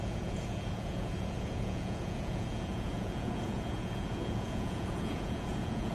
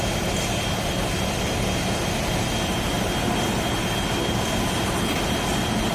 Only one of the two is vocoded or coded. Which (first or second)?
first